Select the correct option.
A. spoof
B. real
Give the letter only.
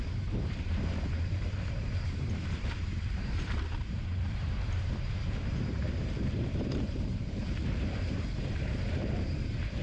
A